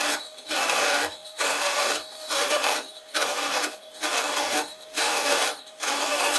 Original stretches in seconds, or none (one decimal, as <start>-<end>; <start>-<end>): none